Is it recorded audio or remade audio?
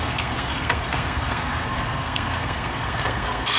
remade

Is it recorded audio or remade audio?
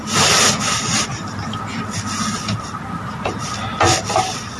recorded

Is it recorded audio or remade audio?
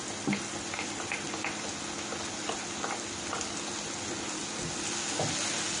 recorded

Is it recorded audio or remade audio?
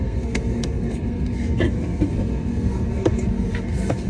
remade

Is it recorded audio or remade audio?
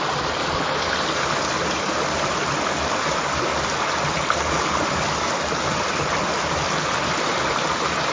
recorded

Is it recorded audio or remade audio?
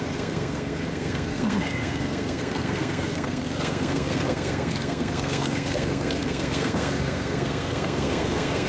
remade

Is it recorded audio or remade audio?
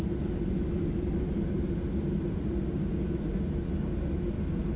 recorded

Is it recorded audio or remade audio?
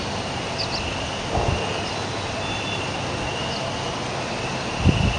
recorded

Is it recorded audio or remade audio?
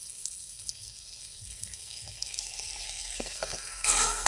remade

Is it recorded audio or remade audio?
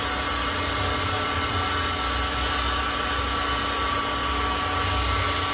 recorded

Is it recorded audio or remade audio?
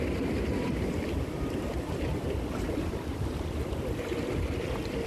recorded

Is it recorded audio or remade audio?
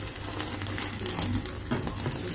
recorded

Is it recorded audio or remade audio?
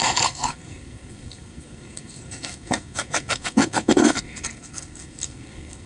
remade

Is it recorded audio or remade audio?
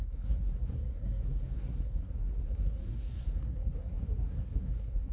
remade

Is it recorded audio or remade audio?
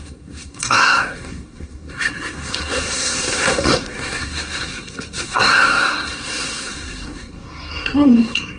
remade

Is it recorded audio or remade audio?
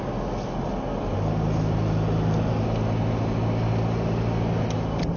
recorded